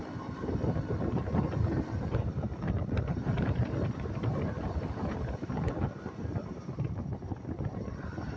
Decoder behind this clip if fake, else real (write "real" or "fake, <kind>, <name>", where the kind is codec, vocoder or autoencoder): fake, vocoder, BigVGAN v2